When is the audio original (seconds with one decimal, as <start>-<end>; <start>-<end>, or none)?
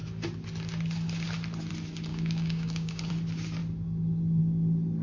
0.0-2.1; 3.1-5.0